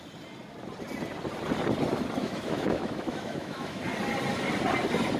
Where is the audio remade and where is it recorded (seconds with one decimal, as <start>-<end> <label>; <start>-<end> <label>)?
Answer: 0.0-2.2 recorded; 2.2-3.8 remade; 3.8-5.2 recorded